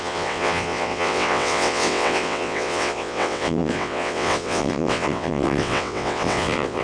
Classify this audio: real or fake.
fake